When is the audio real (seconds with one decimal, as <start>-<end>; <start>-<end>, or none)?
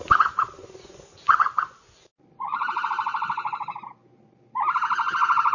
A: 0.0-0.6; 2.9-5.5